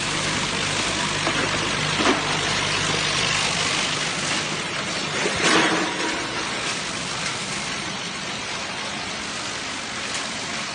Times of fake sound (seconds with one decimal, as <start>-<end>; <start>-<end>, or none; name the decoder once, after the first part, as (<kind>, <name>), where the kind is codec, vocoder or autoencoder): none